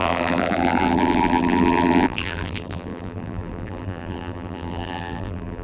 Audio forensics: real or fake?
fake